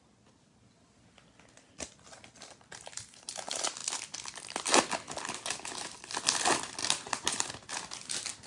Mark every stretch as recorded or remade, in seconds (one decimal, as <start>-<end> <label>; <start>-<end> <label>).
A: 0.0-6.8 recorded; 6.8-7.5 remade; 7.5-8.5 recorded